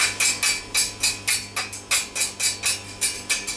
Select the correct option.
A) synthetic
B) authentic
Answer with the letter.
B